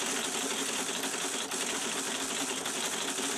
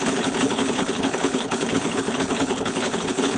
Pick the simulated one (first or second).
second